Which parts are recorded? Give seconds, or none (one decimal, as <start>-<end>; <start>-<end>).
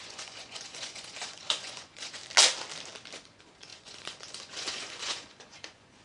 2.2-3.1